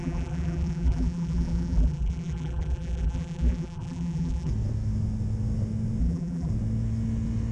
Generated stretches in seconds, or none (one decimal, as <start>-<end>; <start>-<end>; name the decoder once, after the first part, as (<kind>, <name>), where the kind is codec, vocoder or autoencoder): 0.0-4.5 (vocoder, BigVGAN v2); 6.0-6.5